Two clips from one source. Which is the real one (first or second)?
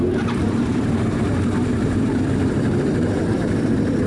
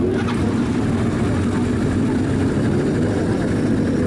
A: second